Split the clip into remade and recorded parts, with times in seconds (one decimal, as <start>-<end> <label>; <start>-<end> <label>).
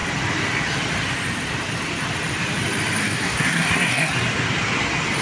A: 0.0-3.0 recorded; 3.0-4.1 remade; 4.1-5.2 recorded